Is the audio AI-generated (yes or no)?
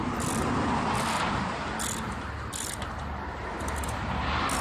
no